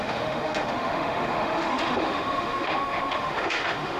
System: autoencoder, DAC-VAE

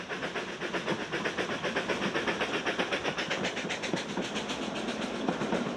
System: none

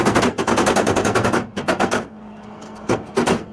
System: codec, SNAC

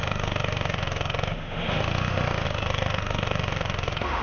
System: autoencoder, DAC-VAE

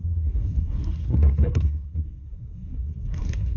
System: codec, SNAC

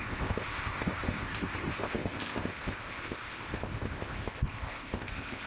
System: codec, ZipCodec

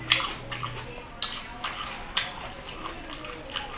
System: none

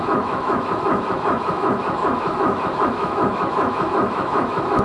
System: autoencoder, DAC-VAE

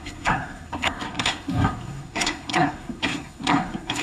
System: codec, SNAC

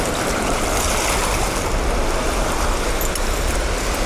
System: none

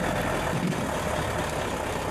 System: none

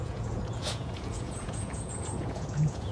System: vocoder, Vocos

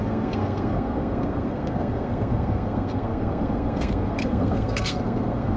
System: codec, SNAC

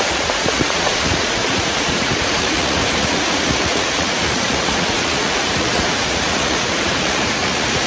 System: vocoder, Vocos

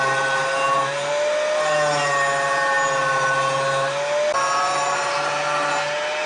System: none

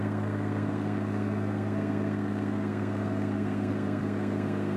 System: codec, SNAC